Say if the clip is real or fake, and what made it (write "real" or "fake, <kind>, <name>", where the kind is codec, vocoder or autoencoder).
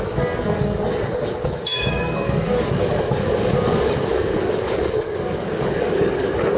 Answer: fake, codec, DAC